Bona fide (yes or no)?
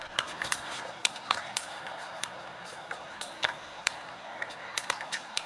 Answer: no